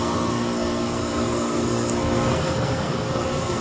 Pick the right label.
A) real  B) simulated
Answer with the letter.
B